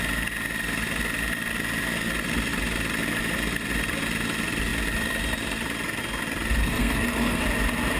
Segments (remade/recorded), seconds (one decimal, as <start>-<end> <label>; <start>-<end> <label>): 0.0-6.6 recorded; 6.6-7.4 remade; 7.4-8.0 recorded

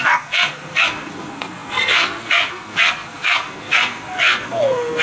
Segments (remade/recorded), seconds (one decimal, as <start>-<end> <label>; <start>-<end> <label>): 0.0-5.0 remade

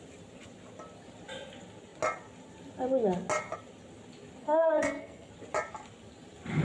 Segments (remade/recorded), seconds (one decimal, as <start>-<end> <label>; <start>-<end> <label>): 0.0-4.4 recorded; 4.4-5.3 remade; 5.3-6.6 recorded

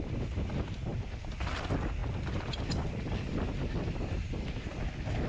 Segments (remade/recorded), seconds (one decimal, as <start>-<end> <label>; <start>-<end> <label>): 0.0-5.3 recorded

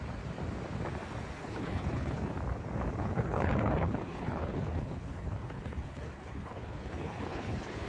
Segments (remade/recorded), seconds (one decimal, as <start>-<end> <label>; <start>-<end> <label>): 0.0-1.4 recorded; 1.4-2.3 remade; 2.3-3.0 recorded; 3.0-7.9 remade

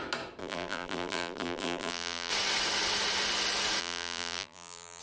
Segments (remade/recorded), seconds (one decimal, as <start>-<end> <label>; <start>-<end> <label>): 0.0-0.4 recorded; 0.4-2.3 remade; 2.3-3.8 recorded; 3.8-5.0 remade

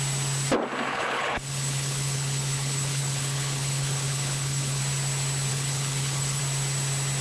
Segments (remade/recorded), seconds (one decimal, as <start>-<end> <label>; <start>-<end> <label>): 0.0-0.9 recorded; 0.9-4.8 remade; 4.8-5.5 recorded; 5.5-6.4 remade; 6.4-7.2 recorded